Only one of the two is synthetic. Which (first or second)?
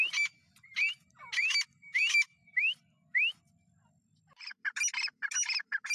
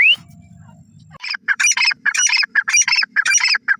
second